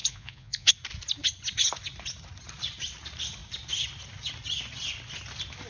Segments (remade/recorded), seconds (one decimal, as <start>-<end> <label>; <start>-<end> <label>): 0.0-0.7 remade; 0.7-5.7 recorded